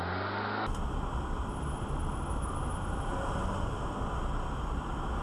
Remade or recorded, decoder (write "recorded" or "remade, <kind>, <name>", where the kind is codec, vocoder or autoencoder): recorded